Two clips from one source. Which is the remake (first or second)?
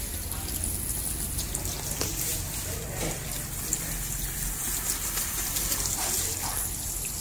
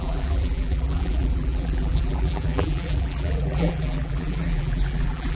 second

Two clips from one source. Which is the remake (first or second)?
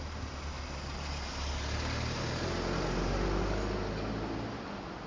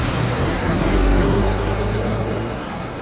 second